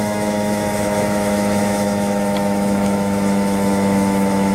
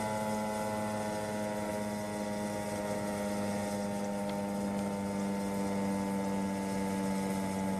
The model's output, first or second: first